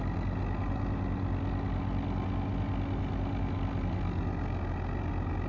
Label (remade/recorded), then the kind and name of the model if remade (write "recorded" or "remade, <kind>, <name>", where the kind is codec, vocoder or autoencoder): recorded